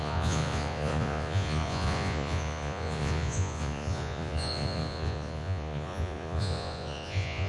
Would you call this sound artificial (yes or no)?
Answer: yes